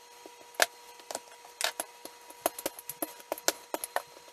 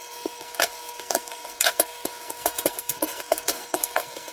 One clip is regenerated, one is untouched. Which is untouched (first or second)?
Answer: first